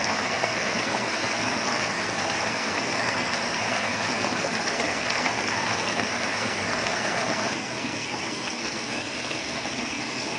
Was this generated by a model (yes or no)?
yes